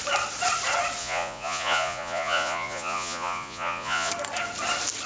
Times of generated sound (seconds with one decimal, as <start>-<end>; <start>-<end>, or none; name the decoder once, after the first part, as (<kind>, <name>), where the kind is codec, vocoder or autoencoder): 1.0-4.1 (vocoder, Vocos)